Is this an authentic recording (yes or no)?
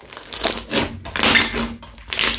yes